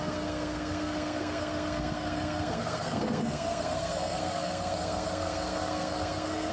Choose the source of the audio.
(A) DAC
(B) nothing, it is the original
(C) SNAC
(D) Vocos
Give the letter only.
C